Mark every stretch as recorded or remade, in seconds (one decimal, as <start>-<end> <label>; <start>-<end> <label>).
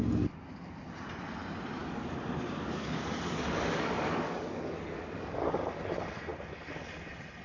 0.0-1.8 recorded; 1.8-5.7 remade; 5.7-7.4 recorded